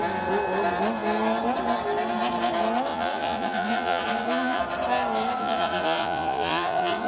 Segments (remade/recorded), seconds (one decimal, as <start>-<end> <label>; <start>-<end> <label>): 0.0-2.9 recorded; 2.9-4.6 remade; 4.6-5.4 recorded; 5.4-7.1 remade